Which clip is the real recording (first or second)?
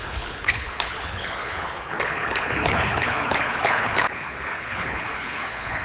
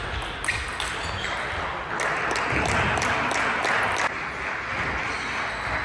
second